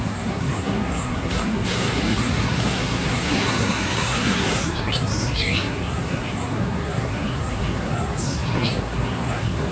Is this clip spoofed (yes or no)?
yes